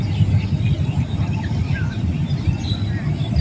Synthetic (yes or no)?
no